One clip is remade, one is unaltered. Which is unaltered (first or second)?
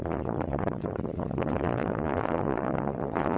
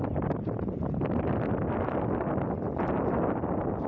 second